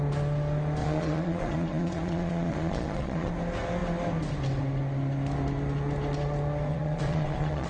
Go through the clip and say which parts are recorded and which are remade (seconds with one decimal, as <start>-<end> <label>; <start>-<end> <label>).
0.0-0.8 recorded; 0.8-3.3 remade; 3.3-6.7 recorded; 6.7-7.7 remade